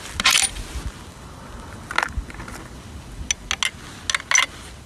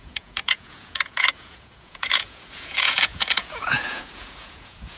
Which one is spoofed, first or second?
second